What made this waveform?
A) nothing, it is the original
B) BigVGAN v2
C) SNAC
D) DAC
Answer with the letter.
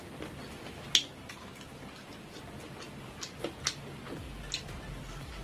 A